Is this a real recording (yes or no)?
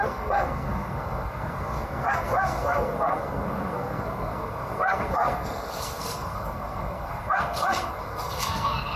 no